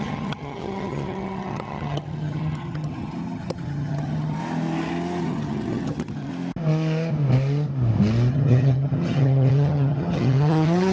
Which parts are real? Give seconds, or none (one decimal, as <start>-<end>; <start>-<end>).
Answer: 4.4-5.2; 6.3-8.3